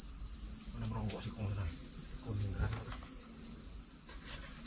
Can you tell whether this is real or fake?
real